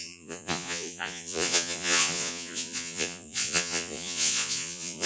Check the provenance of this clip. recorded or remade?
remade